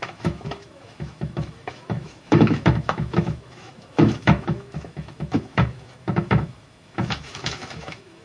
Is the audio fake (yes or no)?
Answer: yes